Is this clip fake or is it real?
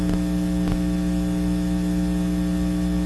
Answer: real